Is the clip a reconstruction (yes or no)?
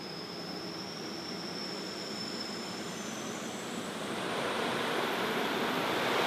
yes